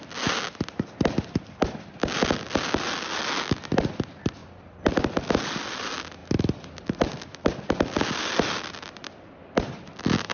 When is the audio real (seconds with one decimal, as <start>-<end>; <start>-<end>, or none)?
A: 0.0-10.3